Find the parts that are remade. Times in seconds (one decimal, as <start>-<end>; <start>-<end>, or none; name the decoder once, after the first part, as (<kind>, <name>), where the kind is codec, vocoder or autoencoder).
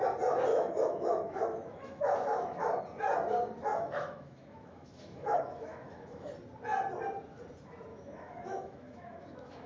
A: 0.5-2.8 (autoencoder, DAC-VAE); 3.7-6.3; 7.9-9.7